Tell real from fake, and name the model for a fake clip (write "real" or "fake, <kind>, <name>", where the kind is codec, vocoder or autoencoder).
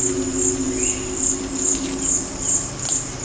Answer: real